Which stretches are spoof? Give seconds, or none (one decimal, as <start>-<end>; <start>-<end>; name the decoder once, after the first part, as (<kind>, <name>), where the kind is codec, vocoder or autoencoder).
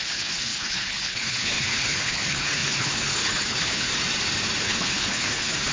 0.0-3.9 (codec, HILCodec); 4.6-5.7